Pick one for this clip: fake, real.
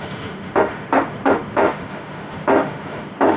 fake